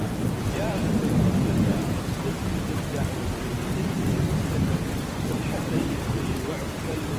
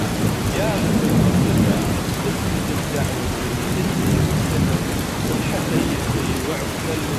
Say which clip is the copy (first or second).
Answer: first